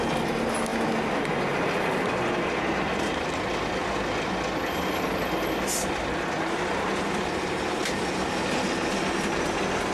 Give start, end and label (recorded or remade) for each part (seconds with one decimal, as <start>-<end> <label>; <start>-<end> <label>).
0.0-9.9 recorded